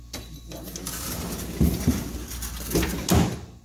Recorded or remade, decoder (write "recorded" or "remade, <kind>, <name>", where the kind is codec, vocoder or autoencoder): recorded